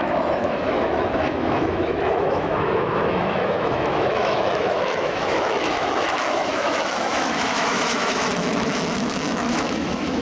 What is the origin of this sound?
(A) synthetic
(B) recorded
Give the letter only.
A